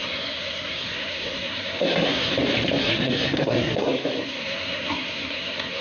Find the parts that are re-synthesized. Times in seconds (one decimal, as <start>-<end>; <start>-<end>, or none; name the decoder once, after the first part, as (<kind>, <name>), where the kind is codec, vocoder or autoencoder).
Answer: 0.0-2.3 (codec, SNAC); 2.8-5.8